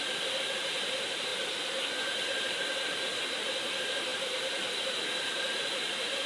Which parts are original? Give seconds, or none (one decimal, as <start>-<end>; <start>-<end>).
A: 1.3-2.3